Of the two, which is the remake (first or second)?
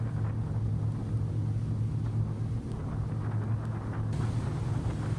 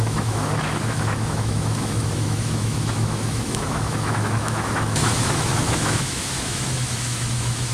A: second